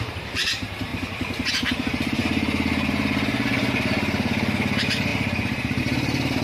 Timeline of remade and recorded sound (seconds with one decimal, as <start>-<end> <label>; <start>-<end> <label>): 0.0-0.9 remade; 0.9-1.5 recorded; 1.5-6.4 remade